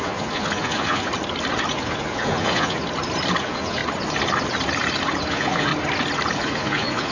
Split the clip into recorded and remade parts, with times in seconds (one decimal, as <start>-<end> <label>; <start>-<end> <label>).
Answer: 0.0-1.1 remade; 1.1-1.7 recorded; 1.7-2.8 remade; 2.8-3.4 recorded; 3.4-3.8 remade; 3.8-5.3 recorded; 5.3-5.7 remade; 5.7-6.4 recorded; 6.4-7.1 remade